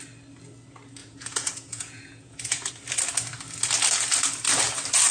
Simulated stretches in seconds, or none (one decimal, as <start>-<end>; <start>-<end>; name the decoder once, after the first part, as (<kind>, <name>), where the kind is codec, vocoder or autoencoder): 1.0-2.7 (vocoder, Vocos)